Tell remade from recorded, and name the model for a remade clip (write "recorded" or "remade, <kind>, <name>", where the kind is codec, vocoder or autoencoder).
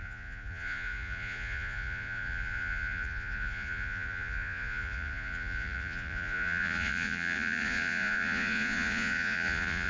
remade, vocoder, Vocos